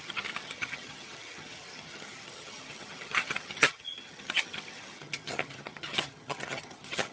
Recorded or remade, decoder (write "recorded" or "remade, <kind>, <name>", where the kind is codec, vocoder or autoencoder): remade, vocoder, HiFi-GAN